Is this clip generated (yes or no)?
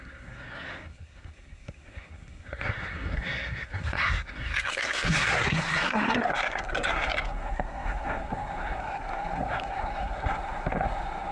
yes